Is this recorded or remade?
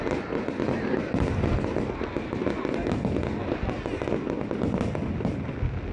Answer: recorded